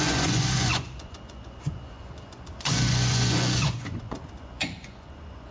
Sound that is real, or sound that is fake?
fake